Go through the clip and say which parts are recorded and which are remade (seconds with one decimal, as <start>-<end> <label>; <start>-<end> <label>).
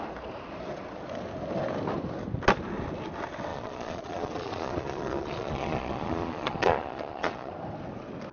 0.0-3.5 recorded; 3.5-7.5 remade; 7.5-8.3 recorded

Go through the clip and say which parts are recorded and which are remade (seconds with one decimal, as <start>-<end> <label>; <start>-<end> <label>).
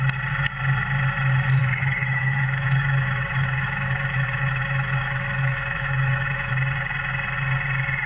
0.0-1.6 recorded; 1.6-6.5 remade; 6.5-8.1 recorded